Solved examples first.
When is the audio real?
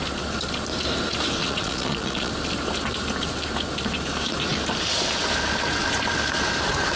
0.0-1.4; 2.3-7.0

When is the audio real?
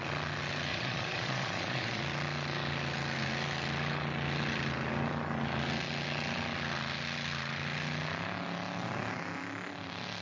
0.0-0.7; 2.0-10.2